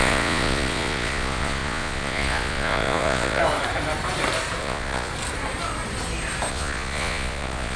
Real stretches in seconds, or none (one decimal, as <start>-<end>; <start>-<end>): 3.4-4.6; 5.1-6.5